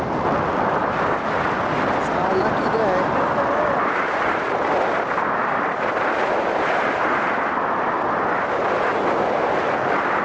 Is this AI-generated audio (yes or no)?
no